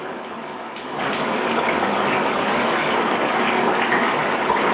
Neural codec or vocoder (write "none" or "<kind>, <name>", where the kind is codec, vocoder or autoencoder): codec, DAC